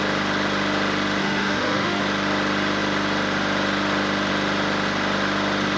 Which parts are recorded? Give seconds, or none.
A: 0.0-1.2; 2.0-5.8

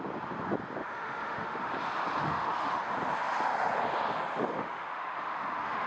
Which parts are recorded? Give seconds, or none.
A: 0.0-0.8; 1.7-2.2; 2.8-4.6

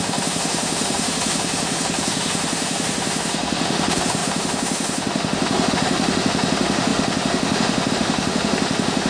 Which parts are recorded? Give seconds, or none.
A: none

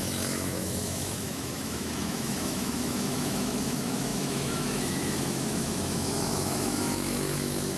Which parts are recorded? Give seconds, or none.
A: none